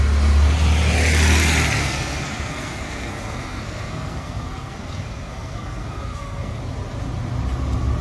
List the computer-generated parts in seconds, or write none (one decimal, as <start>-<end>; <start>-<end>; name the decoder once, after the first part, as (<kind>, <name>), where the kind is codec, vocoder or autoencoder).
1.8-6.6 (codec, SNAC)

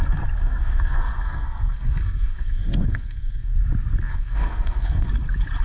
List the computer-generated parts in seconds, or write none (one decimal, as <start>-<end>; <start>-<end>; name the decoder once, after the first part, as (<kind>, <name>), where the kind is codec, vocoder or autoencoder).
0.4-3.5 (codec, SNAC); 4.1-5.1

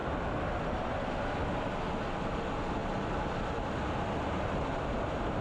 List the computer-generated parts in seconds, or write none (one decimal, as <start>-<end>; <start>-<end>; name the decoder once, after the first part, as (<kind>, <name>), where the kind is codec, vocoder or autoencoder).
none

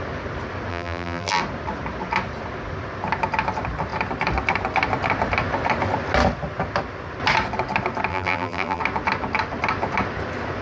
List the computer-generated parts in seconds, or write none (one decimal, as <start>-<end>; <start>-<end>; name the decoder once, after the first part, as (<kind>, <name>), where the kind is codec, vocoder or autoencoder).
0.7-1.4 (vocoder, BigVGAN v2); 8.1-8.8

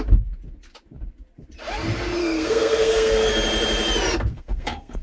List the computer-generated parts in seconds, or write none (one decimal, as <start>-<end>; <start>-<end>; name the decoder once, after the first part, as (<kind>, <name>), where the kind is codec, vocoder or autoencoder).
2.2-3.3 (codec, SNAC); 4.3-5.0

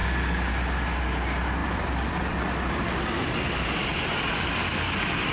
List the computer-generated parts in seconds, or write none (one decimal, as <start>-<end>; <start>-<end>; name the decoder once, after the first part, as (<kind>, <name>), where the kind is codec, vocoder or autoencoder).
0.0-1.0 (vocoder, BigVGAN v2); 1.6-2.7; 3.9-5.3

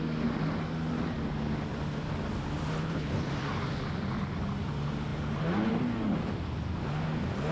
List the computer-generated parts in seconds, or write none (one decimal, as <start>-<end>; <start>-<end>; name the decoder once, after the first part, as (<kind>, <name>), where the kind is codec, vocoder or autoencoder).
2.8-3.3 (codec, HILCodec)

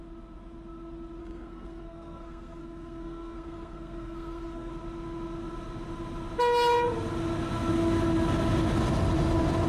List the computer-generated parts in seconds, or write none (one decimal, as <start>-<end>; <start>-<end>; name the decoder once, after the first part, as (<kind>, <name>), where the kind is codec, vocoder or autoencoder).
1.2-4.7 (codec, SNAC)